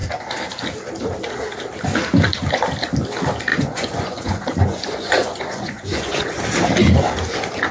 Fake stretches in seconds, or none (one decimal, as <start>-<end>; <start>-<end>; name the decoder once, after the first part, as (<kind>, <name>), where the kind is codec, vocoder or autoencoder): 3.5-6.4 (vocoder, Vocos)